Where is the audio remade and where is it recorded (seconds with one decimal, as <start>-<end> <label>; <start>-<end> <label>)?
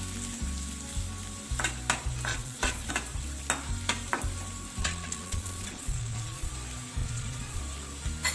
0.0-2.3 recorded; 2.3-2.9 remade; 2.9-4.8 recorded; 4.8-6.5 remade; 6.5-7.0 recorded; 7.0-7.6 remade; 7.6-8.3 recorded